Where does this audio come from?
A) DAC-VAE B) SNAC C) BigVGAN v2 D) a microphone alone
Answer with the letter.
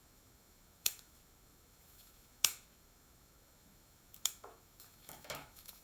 A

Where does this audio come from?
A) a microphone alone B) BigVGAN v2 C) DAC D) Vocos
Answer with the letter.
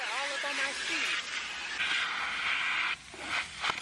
A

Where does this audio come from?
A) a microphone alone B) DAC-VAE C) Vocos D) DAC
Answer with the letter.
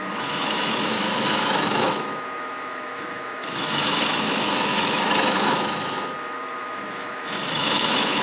B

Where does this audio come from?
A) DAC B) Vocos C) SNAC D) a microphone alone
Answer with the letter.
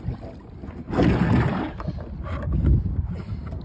D